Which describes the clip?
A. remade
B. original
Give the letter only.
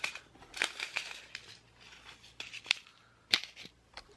B